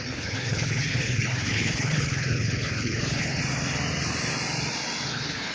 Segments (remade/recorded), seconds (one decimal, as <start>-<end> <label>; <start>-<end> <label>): 0.0-3.4 remade; 3.4-5.1 recorded; 5.1-5.5 remade